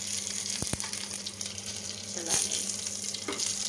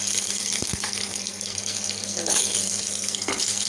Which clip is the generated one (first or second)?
second